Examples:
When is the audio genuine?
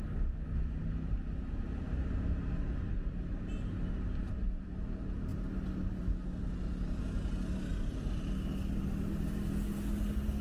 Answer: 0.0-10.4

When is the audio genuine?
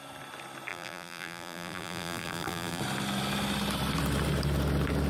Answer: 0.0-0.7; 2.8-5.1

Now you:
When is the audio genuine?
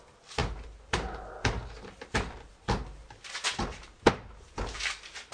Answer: 0.0-0.4; 2.6-3.0; 4.8-5.3